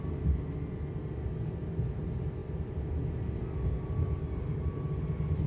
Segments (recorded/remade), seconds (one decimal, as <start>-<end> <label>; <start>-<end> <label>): 0.0-5.5 recorded